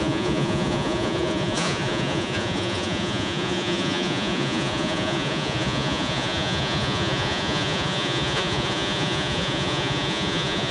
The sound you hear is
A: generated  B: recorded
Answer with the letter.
A